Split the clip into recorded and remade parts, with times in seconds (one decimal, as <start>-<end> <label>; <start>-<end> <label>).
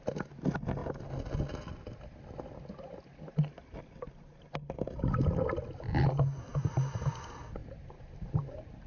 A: 0.0-6.5 recorded; 6.5-7.1 remade; 7.1-7.6 recorded; 7.6-8.3 remade; 8.3-8.9 recorded